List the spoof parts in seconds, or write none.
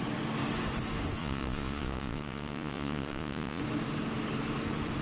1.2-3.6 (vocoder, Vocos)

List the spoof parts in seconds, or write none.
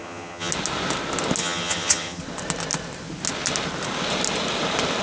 0.0-0.5 (vocoder, HiFi-GAN); 1.4-2.2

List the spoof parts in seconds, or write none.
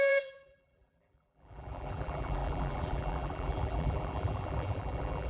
0.0-5.3 (vocoder, BigVGAN v2)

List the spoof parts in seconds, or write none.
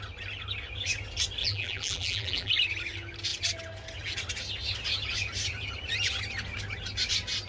1.4-2.5 (vocoder, BigVGAN v2)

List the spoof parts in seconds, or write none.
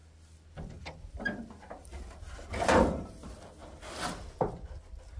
none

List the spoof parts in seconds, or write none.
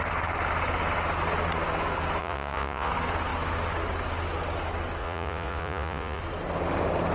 2.2-2.9 (vocoder, Vocos); 5.0-6.2